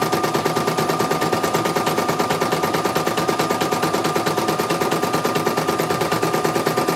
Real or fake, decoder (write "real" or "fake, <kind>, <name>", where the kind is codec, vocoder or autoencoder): fake, vocoder, BigVGAN v2